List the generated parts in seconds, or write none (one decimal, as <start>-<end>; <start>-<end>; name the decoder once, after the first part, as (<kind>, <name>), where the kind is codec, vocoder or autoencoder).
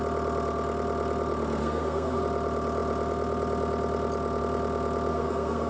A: 1.6-2.2 (codec, SNAC); 5.1-5.7